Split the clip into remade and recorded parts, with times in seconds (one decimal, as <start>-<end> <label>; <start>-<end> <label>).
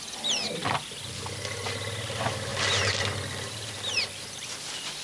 0.0-5.0 recorded